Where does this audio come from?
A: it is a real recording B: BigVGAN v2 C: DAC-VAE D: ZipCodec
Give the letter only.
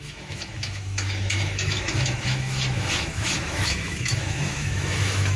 C